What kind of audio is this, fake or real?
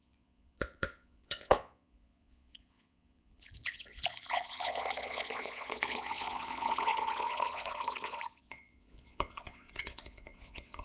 fake